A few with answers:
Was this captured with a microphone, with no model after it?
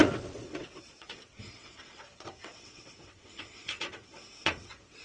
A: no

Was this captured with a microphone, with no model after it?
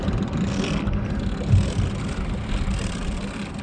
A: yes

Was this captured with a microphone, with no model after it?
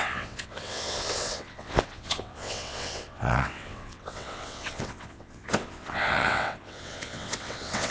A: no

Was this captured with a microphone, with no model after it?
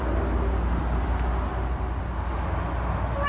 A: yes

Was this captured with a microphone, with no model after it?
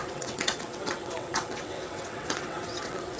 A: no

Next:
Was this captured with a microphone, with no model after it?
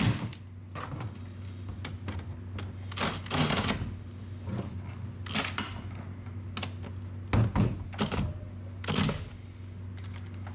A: yes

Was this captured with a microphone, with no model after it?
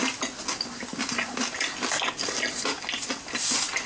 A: yes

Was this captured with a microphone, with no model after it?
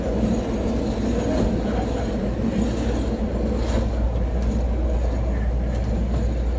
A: yes